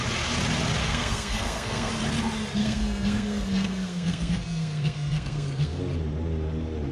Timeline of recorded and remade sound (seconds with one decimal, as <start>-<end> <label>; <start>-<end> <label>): 0.0-0.8 recorded; 0.8-1.9 remade; 1.9-2.6 recorded; 2.6-5.8 remade; 5.8-6.9 recorded